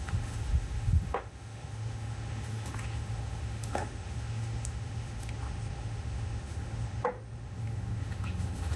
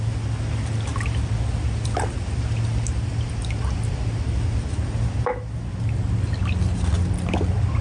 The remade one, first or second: first